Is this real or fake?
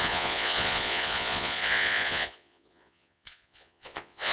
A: fake